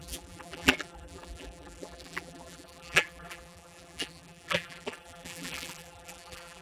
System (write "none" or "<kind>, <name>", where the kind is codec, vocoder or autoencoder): vocoder, BigVGAN v2